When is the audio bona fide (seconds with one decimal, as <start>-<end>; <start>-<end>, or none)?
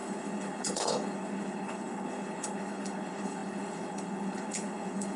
none